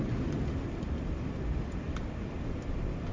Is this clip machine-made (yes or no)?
no